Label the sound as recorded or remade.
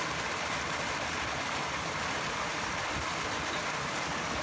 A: recorded